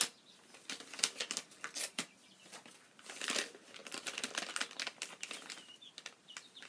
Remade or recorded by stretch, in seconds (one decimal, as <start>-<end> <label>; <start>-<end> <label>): 0.0-6.7 recorded

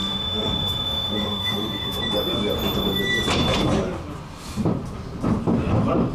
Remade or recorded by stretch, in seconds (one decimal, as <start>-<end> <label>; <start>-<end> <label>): 0.0-2.0 remade; 2.0-6.1 recorded

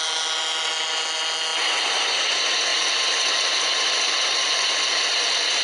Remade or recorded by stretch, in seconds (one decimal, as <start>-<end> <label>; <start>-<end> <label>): 0.0-2.7 recorded; 2.7-5.6 remade

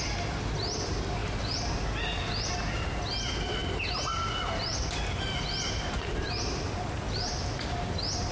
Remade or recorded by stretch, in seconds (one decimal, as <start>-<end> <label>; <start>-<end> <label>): 0.0-8.3 recorded

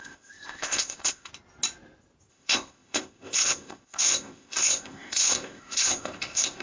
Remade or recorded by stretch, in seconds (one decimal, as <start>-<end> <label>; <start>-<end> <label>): 0.0-1.3 remade; 1.3-2.3 recorded; 2.3-6.6 remade

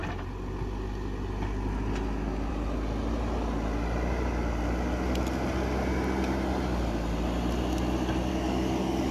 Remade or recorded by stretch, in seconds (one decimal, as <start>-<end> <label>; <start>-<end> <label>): 0.0-8.3 recorded; 8.3-9.1 remade